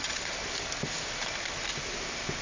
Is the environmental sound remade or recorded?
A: recorded